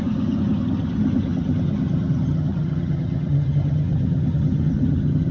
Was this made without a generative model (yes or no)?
no